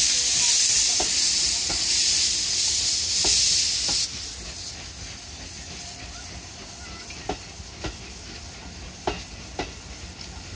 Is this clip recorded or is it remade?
recorded